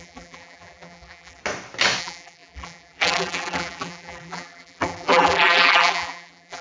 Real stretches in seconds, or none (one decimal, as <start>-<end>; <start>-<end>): 1.4-2.0